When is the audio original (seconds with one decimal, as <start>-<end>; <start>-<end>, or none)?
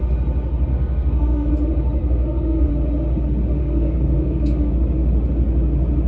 0.0-0.7; 1.5-2.0; 2.7-3.6; 4.7-6.1